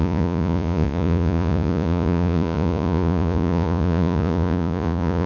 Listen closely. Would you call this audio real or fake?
fake